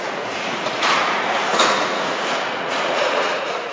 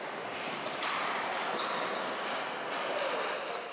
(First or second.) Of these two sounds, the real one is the second